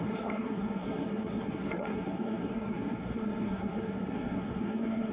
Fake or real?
fake